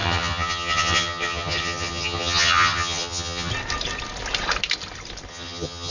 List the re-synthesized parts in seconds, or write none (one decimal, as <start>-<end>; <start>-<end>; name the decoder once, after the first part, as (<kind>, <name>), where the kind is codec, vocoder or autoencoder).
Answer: 0.0-3.5 (vocoder, HiFi-GAN); 5.3-5.9

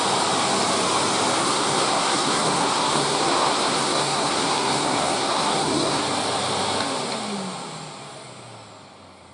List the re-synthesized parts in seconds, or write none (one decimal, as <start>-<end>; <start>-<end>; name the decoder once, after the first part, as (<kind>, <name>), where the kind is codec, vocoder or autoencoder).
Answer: 1.4-6.0 (codec, SNAC)

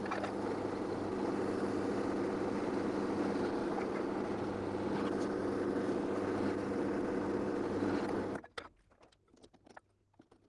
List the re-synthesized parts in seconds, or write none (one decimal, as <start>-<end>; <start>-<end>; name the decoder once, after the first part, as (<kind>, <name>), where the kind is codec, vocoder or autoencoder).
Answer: none

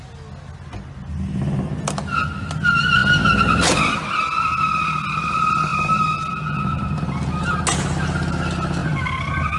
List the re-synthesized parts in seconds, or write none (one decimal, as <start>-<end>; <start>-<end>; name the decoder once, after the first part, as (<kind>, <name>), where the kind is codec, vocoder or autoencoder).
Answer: none

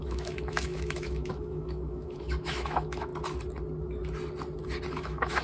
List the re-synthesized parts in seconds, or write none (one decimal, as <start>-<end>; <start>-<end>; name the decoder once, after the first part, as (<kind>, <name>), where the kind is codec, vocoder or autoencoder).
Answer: 0.0-3.1 (autoencoder, DAC-VAE); 4.9-5.4

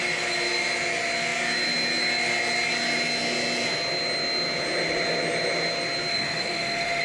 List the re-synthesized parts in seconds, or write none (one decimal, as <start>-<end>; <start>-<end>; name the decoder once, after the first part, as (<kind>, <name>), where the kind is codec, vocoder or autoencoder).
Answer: 6.1-7.0 (autoencoder, DAC-VAE)

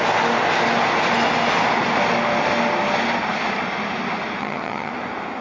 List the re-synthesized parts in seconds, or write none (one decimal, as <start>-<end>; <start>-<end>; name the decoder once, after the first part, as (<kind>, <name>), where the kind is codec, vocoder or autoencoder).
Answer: 4.4-4.9 (vocoder, HiFi-GAN)